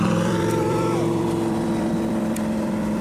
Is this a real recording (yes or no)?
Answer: no